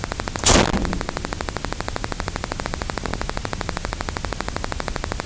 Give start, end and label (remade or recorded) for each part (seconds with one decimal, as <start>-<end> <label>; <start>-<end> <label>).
0.0-5.3 recorded